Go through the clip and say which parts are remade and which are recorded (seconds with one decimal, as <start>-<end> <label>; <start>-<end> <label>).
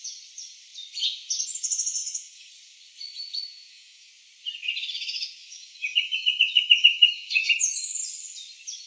0.0-2.0 recorded; 2.0-2.5 remade; 2.5-3.1 recorded; 3.1-4.1 remade; 4.1-5.4 recorded; 5.4-8.0 remade; 8.0-8.9 recorded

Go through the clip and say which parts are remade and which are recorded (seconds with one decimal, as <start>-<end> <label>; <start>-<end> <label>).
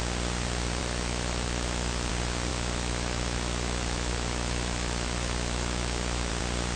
0.0-0.8 recorded; 0.8-2.1 remade; 2.1-2.5 recorded; 2.5-6.3 remade; 6.3-6.8 recorded